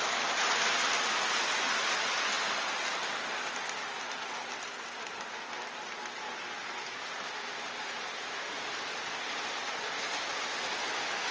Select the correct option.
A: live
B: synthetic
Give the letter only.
A